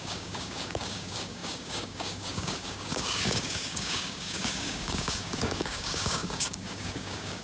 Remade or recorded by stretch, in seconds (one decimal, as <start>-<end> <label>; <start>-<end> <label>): 0.0-7.4 remade